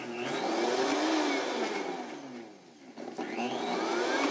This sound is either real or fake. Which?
real